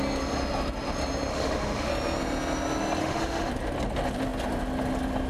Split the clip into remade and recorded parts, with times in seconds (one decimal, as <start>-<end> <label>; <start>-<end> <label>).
0.0-1.3 recorded; 1.3-1.9 remade; 1.9-3.0 recorded; 3.0-3.5 remade; 3.5-5.3 recorded